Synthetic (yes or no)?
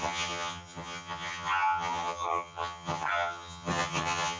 yes